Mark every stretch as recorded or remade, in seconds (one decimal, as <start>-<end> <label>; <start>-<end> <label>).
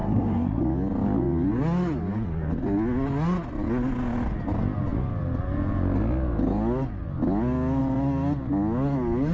0.0-0.6 remade; 0.6-9.3 recorded